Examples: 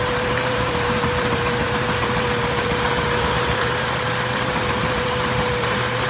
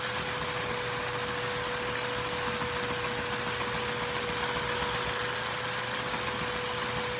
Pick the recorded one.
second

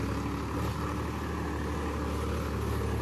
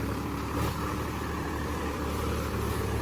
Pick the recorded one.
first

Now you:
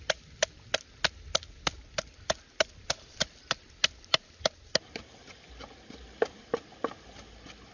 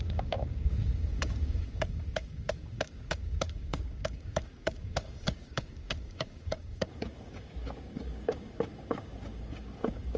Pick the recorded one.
first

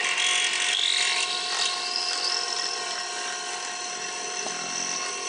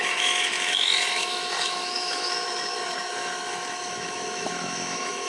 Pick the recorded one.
first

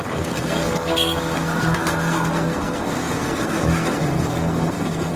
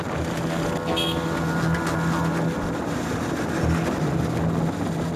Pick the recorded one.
second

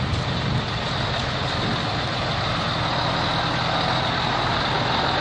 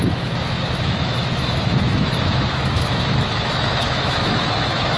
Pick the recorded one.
first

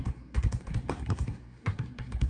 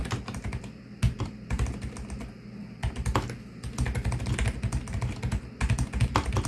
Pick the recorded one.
second